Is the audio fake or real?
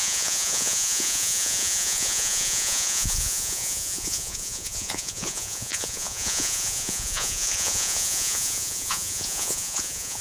fake